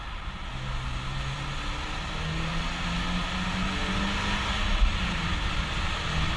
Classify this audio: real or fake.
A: real